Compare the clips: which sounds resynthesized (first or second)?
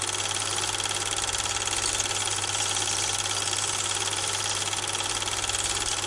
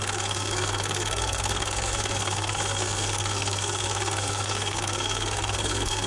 second